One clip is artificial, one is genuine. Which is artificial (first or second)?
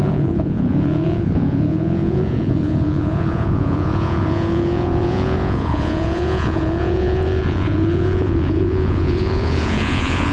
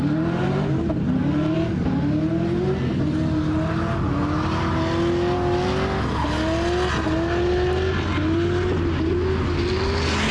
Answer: first